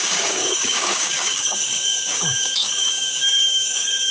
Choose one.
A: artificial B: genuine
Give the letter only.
A